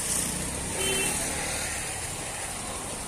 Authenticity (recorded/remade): recorded